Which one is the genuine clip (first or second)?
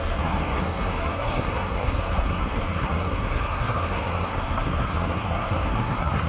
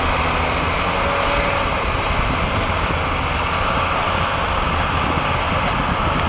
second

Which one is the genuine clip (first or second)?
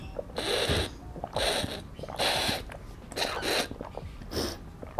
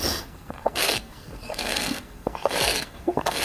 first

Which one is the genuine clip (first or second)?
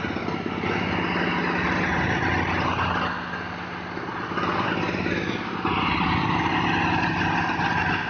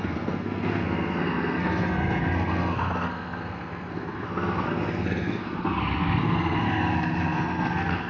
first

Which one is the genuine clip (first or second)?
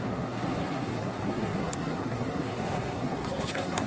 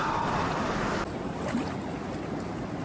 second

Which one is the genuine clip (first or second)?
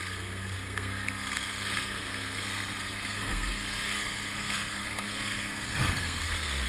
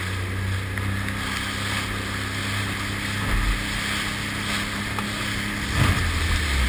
second